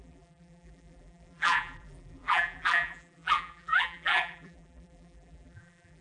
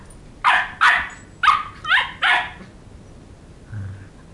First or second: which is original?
second